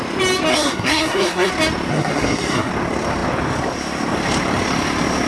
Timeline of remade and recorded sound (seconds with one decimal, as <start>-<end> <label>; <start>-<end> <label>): 0.0-0.5 recorded; 0.5-1.5 remade; 1.5-1.9 recorded; 1.9-2.7 remade; 2.7-5.3 recorded